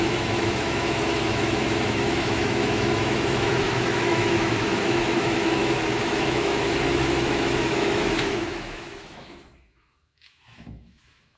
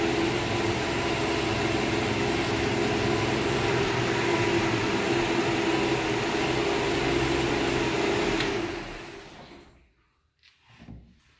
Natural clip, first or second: second